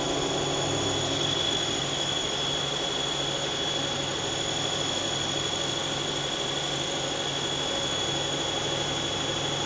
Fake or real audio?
real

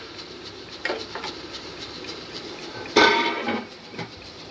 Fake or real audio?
fake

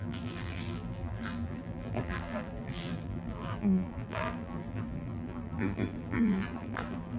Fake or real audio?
fake